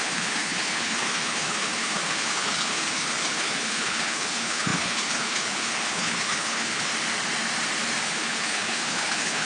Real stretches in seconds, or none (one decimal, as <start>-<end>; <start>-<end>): 6.9-8.0